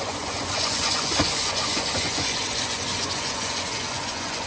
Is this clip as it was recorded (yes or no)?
no